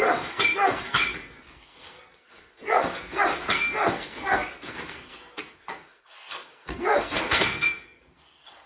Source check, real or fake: fake